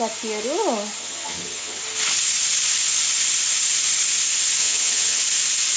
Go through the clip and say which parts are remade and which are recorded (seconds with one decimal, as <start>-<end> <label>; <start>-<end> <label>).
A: 0.0-1.0 recorded; 1.0-1.8 remade; 1.8-4.6 recorded; 4.6-5.2 remade; 5.2-5.8 recorded